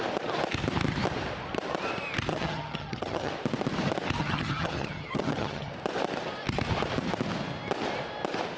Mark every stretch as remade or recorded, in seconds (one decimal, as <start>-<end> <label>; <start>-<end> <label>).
0.0-2.3 recorded; 2.3-3.3 remade; 3.3-4.2 recorded; 4.2-5.7 remade; 5.7-8.6 recorded